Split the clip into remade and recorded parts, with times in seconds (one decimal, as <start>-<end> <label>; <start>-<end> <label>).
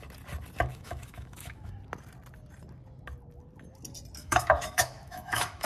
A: 0.0-0.7 recorded; 0.7-1.7 remade; 1.7-4.2 recorded; 4.2-5.7 remade